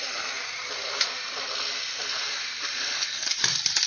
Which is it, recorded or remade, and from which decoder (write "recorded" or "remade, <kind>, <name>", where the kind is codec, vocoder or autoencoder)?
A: recorded